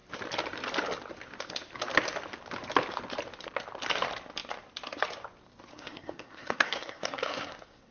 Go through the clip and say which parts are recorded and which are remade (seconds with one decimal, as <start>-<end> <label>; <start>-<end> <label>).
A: 0.0-5.7 recorded; 5.7-7.9 remade